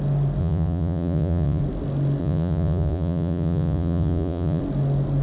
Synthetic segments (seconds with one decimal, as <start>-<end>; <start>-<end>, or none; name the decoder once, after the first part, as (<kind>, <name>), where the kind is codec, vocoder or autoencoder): 0.4-1.6 (vocoder, Vocos); 2.2-4.6